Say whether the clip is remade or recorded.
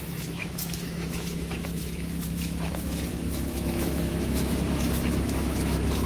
remade